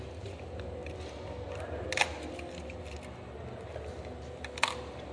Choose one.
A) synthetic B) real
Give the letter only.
B